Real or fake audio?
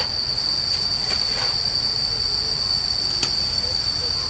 real